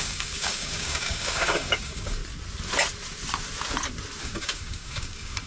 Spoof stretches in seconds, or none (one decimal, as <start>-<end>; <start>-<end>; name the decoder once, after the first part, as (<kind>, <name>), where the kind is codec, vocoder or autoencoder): 0.0-2.2 (codec, DAC); 4.2-5.5